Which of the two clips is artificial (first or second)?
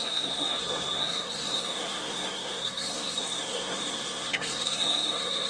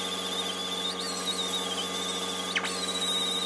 first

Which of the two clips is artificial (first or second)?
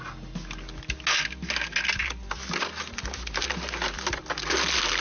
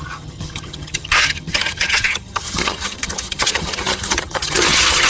second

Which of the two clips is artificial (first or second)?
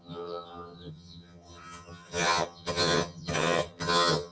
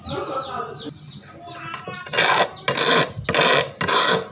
first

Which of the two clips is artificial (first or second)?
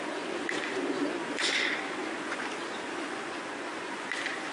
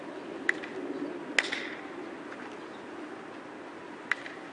first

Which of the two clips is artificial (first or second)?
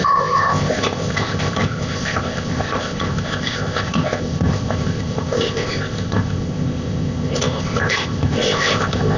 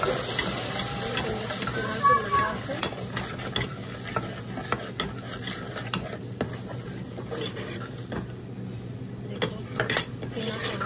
first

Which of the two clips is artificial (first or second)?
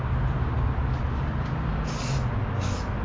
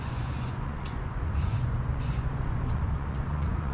second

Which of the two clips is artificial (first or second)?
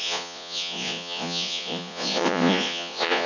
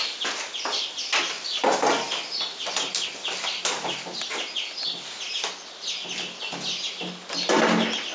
first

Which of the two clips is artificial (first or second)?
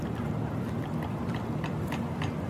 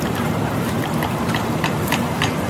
second